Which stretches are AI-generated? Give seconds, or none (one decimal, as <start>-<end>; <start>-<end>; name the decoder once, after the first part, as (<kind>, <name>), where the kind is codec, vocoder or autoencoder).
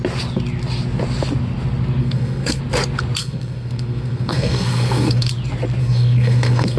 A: 2.0-2.6 (codec, SNAC); 3.2-5.3; 5.8-6.8